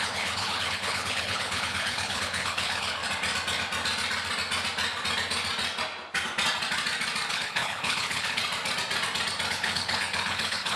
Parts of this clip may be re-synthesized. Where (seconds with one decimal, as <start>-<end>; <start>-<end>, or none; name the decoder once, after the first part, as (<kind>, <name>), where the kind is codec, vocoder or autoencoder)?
0.0-3.0 (codec, HILCodec); 7.3-8.4; 9.5-10.8